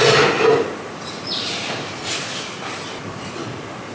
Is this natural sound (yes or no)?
yes